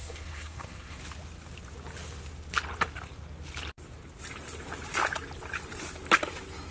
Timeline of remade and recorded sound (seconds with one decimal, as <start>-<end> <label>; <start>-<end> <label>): 0.0-1.0 remade; 1.0-6.7 recorded